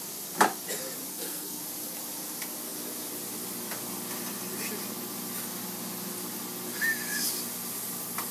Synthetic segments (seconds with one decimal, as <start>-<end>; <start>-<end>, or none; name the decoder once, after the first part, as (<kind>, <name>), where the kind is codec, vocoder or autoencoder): 1.1-1.6 (codec, SNAC)